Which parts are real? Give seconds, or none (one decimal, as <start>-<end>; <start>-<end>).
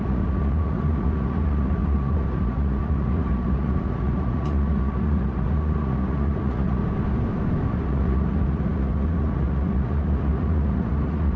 6.8-7.7